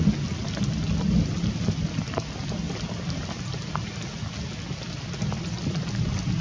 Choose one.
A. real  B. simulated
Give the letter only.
A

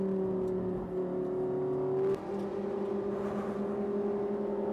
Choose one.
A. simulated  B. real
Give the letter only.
B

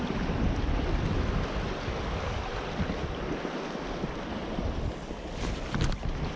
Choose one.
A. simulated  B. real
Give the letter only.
B